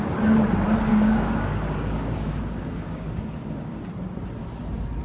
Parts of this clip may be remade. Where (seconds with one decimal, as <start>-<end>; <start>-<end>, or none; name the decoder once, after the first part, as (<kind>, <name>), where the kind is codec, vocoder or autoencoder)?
0.9-3.9 (codec, DAC)

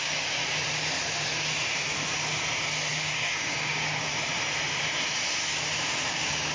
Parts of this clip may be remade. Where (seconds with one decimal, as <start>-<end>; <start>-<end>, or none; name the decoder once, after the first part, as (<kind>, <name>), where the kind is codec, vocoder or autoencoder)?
0.0-0.4 (codec, DAC); 2.9-4.1; 6.1-6.5